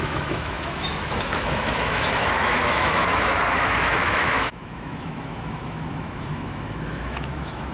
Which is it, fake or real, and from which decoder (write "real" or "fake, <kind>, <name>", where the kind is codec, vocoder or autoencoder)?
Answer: fake, autoencoder, DAC-VAE